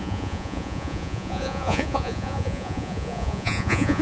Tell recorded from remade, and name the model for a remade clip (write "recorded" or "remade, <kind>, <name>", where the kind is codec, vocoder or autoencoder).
remade, vocoder, Vocos